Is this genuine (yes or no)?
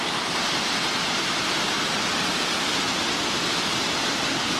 no